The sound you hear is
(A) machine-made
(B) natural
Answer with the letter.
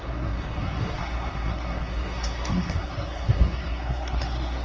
A